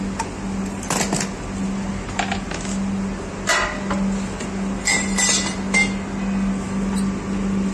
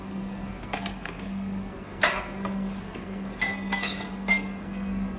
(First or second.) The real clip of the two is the first